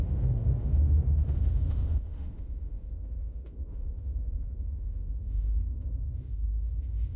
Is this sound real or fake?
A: fake